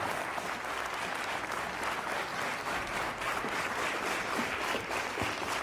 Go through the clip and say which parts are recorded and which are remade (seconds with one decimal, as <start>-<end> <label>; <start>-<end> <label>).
0.0-2.3 recorded; 2.3-5.6 remade